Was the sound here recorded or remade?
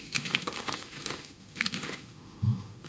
remade